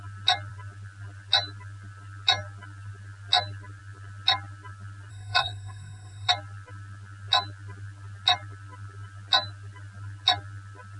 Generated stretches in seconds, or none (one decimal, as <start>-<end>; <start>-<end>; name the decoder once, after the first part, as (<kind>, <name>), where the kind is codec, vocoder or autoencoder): 5.1-6.3 (codec, SNAC)